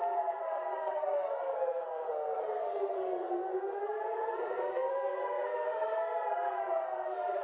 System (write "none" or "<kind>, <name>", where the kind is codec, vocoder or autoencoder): codec, SNAC